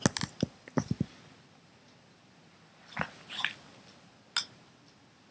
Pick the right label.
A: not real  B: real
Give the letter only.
B